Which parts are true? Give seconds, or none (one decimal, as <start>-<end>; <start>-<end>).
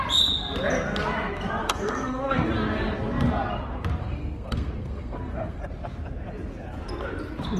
0.0-1.6; 2.5-4.0; 5.6-7.6